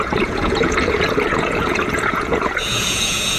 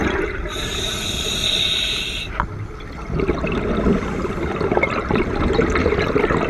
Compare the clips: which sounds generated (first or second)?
first